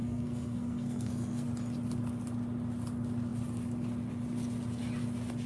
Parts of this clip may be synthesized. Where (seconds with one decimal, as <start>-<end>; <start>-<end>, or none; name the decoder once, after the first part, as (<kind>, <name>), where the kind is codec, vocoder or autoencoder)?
0.0-1.5 (codec, SNAC)